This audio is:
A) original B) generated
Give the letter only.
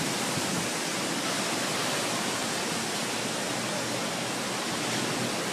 A